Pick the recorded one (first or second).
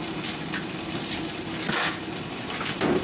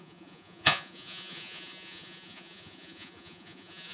first